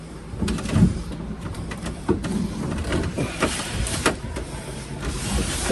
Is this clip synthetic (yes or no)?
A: yes